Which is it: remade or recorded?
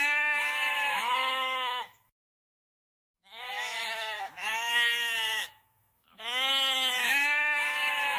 remade